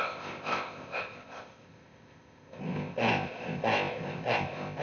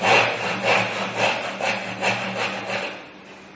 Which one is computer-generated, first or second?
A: first